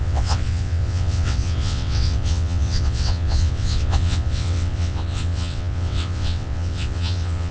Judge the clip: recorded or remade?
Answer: remade